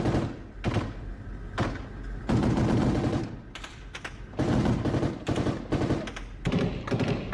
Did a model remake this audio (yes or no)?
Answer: no